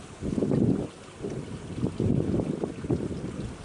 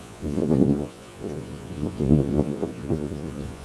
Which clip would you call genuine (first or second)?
first